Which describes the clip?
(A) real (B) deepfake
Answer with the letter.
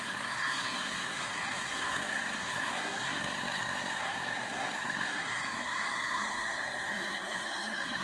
B